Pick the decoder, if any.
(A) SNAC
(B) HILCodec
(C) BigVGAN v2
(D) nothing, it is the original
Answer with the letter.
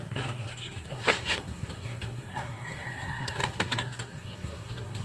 A